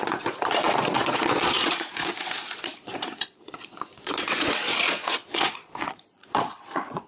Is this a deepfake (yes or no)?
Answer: yes